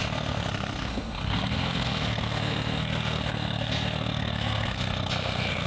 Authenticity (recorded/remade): remade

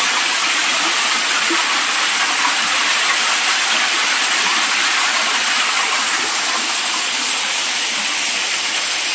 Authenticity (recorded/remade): recorded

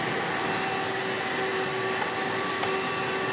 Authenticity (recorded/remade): recorded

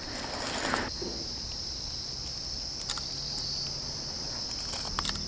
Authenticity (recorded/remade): recorded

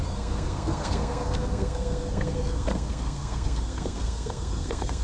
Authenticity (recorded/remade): remade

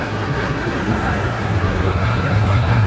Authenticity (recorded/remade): remade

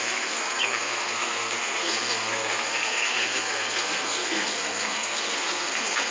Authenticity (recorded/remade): remade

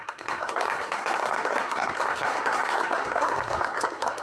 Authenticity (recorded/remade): remade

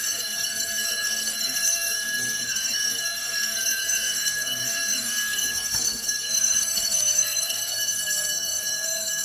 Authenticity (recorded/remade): remade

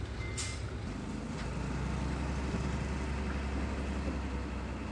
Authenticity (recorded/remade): recorded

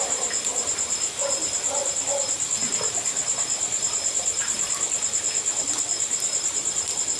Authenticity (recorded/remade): recorded